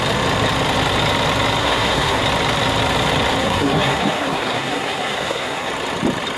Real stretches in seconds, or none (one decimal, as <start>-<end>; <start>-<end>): 0.0-1.6; 2.2-3.4; 5.7-6.4